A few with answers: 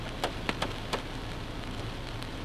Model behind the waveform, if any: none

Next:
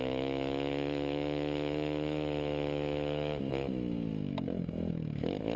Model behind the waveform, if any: autoencoder, DAC-VAE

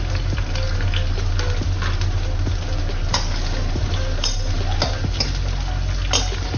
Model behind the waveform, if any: none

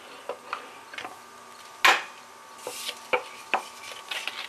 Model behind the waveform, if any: none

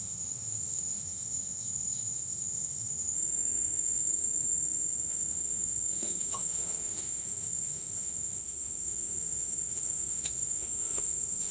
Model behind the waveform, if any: autoencoder, DAC-VAE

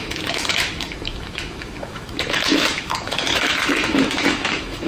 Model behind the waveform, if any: autoencoder, DAC-VAE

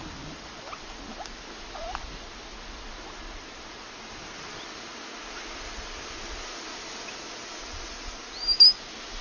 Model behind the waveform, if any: none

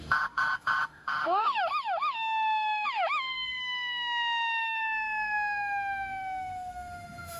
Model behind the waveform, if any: autoencoder, DAC-VAE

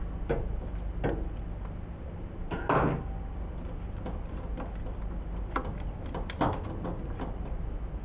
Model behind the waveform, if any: none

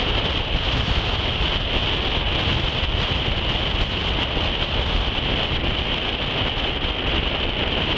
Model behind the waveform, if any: none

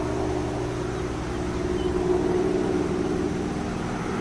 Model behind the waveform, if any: none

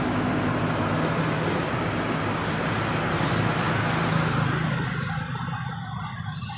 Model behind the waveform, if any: none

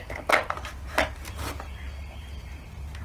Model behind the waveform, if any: none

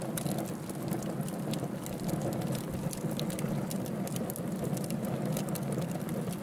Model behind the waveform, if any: none